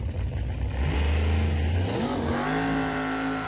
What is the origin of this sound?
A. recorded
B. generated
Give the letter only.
A